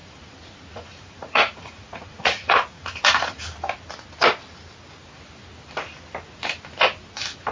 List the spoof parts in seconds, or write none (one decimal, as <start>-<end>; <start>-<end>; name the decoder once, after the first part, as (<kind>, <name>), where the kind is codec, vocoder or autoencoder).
0.0-3.4 (vocoder, Vocos)